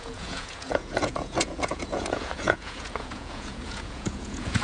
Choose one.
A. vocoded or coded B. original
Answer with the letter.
A